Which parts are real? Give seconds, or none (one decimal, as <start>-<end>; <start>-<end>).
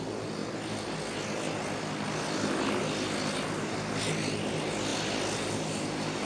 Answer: 0.0-6.3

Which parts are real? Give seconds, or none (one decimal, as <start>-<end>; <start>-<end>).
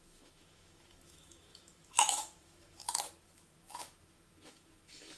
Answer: none